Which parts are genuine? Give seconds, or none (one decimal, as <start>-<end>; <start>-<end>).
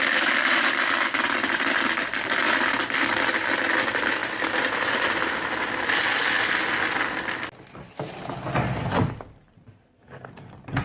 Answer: 0.0-10.8